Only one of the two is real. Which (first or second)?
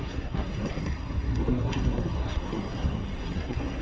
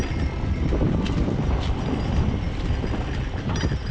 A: second